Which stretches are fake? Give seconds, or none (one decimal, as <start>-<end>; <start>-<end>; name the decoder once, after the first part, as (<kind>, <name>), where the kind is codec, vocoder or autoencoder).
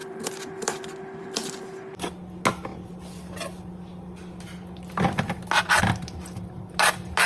none